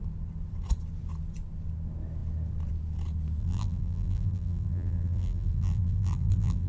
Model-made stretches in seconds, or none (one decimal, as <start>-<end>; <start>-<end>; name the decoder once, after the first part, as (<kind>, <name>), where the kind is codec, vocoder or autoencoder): 3.4-6.7 (vocoder, BigVGAN v2)